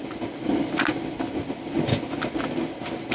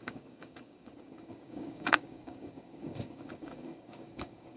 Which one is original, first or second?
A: first